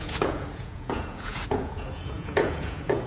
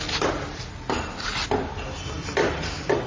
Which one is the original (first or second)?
second